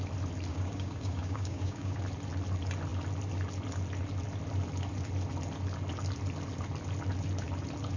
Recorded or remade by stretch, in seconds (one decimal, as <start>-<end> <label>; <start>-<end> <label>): 0.0-0.5 recorded; 0.5-2.0 remade; 2.0-8.0 recorded